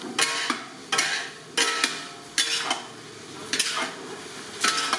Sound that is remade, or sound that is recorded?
recorded